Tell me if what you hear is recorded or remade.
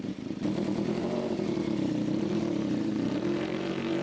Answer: remade